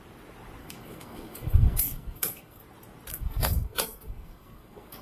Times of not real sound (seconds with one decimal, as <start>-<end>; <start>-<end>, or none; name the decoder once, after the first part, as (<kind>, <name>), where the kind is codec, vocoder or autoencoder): 0.6-2.6 (codec, SNAC); 3.1-5.0